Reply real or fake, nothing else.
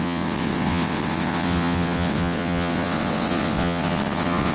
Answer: fake